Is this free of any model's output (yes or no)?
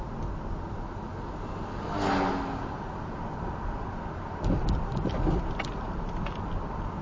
yes